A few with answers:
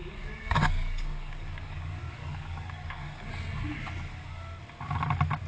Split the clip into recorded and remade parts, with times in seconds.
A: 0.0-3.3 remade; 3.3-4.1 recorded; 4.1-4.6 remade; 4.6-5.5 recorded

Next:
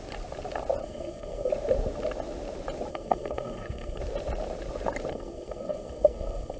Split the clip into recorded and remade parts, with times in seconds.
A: 0.0-0.8 recorded; 0.8-1.5 remade; 1.5-2.9 recorded; 2.9-4.0 remade; 4.0-5.1 recorded; 5.1-6.6 remade